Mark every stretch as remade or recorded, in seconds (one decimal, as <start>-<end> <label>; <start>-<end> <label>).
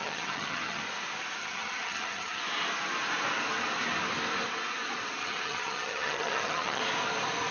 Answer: 0.0-0.8 remade; 0.8-1.4 recorded; 1.4-2.4 remade; 2.4-5.2 recorded; 5.2-6.8 remade; 6.8-7.5 recorded